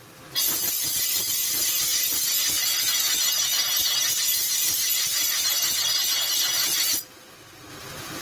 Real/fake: real